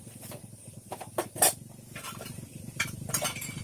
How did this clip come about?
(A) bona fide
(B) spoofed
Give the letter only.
B